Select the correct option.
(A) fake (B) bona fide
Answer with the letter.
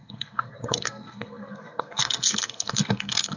A